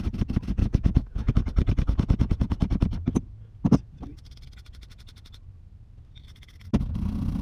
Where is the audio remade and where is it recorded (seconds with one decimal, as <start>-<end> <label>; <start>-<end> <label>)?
0.0-0.6 recorded; 0.6-1.3 remade; 1.3-7.4 recorded